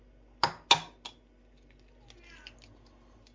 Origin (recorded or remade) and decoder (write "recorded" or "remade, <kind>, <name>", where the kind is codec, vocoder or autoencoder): recorded